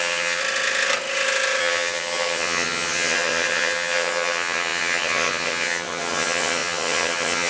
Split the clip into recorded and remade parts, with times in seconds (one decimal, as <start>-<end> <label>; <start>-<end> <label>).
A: 0.0-0.4 remade; 0.4-1.6 recorded; 1.6-7.5 remade